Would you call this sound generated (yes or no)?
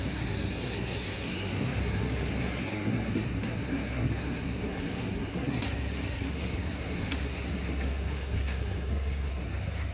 yes